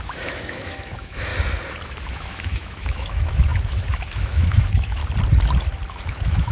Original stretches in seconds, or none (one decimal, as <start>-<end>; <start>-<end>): 1.3-2.1; 5.0-5.9